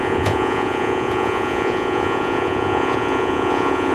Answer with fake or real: fake